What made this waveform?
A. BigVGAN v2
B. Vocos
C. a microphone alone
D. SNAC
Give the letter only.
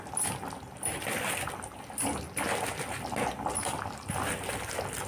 C